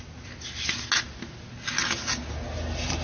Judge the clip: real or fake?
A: real